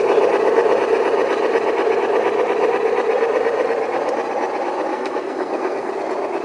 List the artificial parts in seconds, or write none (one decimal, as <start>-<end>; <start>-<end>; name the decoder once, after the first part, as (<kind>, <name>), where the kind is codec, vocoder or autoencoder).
4.9-5.9 (codec, SNAC)